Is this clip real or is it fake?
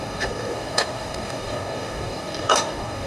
fake